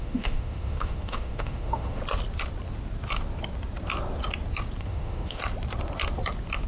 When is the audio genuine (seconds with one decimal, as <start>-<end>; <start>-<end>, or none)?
2.0-4.8; 5.4-6.7